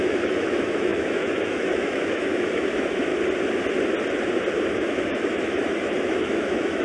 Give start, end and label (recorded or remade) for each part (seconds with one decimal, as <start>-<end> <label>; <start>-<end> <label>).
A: 0.0-3.1 remade; 3.1-4.7 recorded; 4.7-6.8 remade